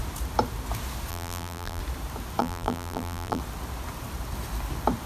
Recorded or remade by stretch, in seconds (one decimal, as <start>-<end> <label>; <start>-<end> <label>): 0.0-1.1 recorded; 1.1-1.8 remade; 1.8-2.4 recorded; 2.4-3.4 remade; 3.4-5.1 recorded